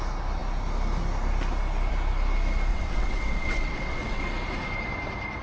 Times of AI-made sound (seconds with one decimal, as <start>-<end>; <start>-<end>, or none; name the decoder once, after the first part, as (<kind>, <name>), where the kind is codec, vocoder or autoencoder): 2.7-4.2 (vocoder, WaveNeXt)